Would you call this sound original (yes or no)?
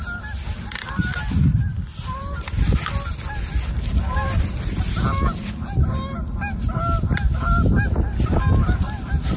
yes